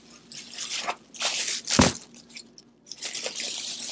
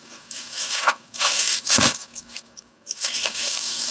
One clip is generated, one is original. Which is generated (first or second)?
second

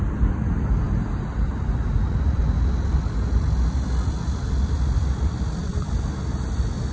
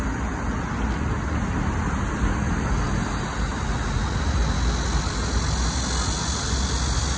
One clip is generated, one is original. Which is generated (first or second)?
first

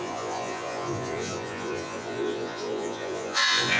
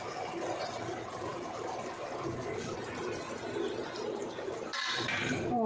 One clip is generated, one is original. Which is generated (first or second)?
first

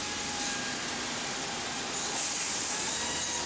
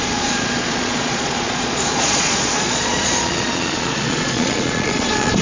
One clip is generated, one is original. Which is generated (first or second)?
second